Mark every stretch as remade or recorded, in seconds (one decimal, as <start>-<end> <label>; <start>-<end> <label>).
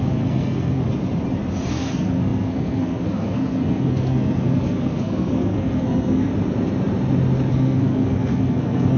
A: 0.0-0.8 remade; 0.8-1.7 recorded; 1.7-6.3 remade; 6.3-7.5 recorded; 7.5-9.0 remade